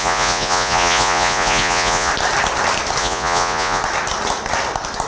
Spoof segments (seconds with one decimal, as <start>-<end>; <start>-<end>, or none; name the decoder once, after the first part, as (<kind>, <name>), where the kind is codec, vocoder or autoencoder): 0.0-2.1 (vocoder, Vocos); 3.0-3.8